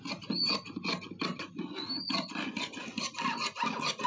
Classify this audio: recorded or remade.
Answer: recorded